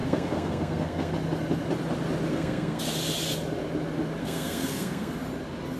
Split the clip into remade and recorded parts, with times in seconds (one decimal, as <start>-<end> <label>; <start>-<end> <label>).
0.0-1.1 remade; 1.1-2.3 recorded; 2.3-2.8 remade; 2.8-4.2 recorded; 4.2-5.1 remade; 5.1-5.8 recorded